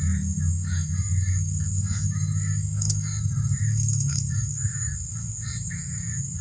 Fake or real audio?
fake